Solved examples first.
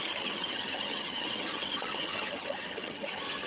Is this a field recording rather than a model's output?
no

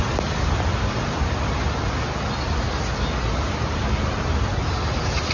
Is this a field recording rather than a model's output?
yes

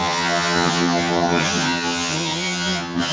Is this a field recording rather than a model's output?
no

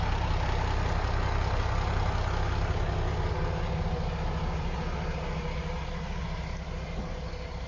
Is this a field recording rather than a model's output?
yes